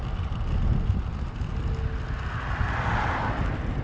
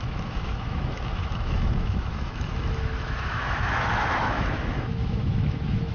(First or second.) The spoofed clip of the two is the second